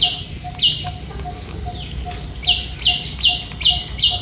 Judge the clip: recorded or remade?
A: recorded